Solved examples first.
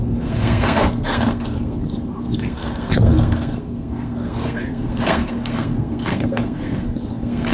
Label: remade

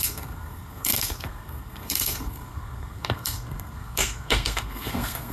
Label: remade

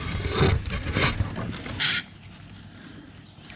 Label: recorded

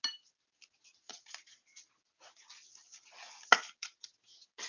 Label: recorded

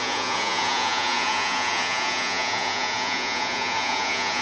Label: remade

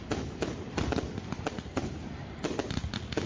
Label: recorded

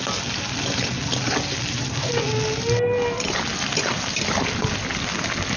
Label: recorded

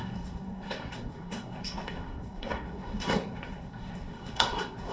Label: remade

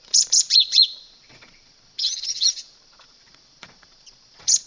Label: remade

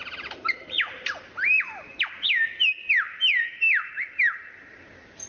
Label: recorded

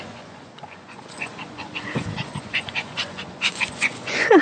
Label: remade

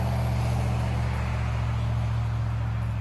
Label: recorded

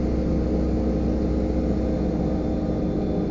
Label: recorded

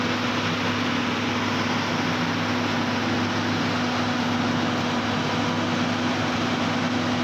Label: recorded